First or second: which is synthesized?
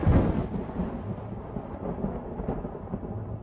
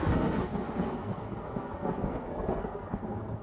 second